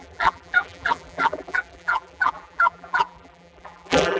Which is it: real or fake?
fake